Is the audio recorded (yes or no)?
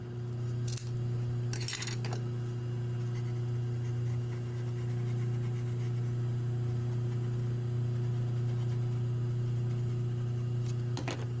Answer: yes